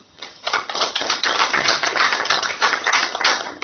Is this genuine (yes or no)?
no